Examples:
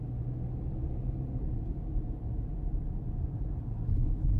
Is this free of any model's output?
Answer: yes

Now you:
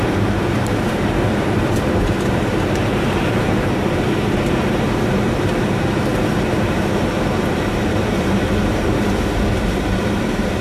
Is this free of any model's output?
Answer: no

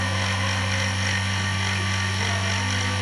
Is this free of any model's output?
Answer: yes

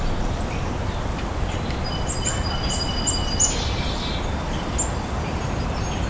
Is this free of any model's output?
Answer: yes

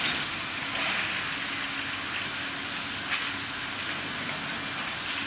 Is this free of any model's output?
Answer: yes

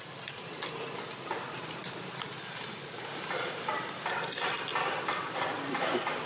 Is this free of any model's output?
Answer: yes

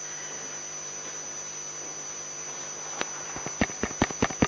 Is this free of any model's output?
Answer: yes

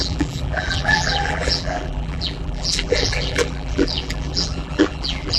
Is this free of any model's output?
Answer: no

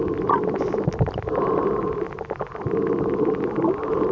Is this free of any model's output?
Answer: no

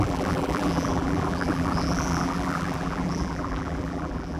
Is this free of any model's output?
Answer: no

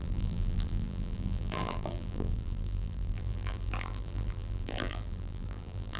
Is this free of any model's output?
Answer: no